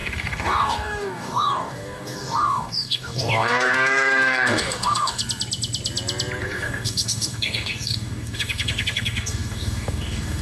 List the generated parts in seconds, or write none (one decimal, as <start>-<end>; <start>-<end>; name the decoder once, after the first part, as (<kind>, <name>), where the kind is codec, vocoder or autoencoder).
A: 0.0-5.2 (codec, DAC); 6.4-10.4